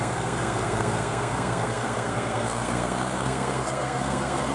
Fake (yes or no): yes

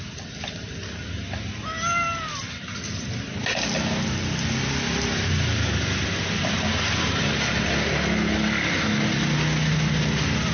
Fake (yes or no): no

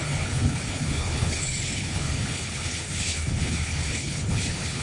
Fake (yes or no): yes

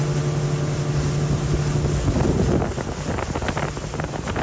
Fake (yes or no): no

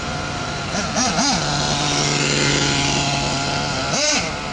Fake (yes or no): no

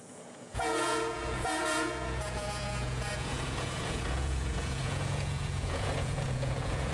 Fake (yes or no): yes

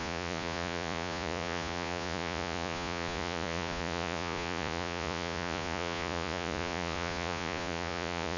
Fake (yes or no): yes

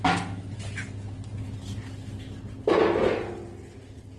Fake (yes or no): no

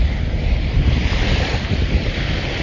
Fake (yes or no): yes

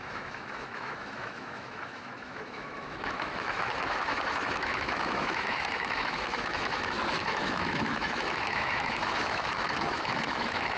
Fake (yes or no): yes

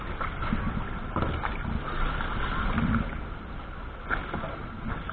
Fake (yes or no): no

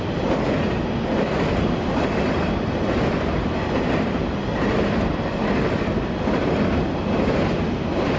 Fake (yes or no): no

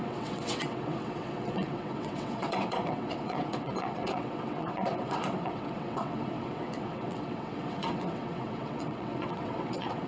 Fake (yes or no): yes